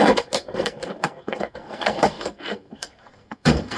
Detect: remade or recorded remade